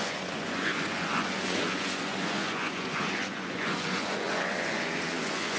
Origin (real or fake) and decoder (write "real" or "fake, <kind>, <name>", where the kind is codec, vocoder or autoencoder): fake, vocoder, Vocos